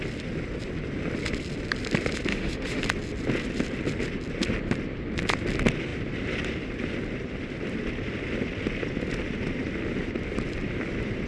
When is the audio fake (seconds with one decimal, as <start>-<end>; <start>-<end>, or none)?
2.3-2.8